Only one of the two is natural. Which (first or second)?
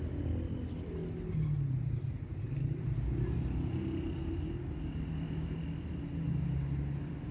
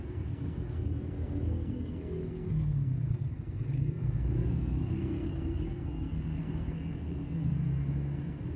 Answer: first